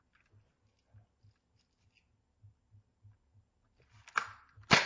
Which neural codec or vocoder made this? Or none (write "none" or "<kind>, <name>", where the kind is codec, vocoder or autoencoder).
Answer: none